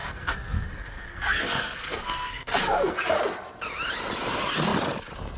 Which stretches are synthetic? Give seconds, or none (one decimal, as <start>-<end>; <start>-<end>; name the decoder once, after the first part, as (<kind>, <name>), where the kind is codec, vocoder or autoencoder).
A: 0.0-3.2 (codec, SNAC)